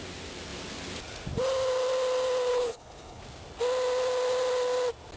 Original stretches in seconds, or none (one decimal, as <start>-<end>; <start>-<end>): 0.0-2.5; 3.2-5.2